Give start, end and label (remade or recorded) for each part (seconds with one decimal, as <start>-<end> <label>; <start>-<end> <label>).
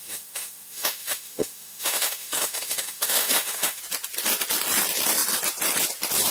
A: 0.0-3.8 remade; 3.8-6.3 recorded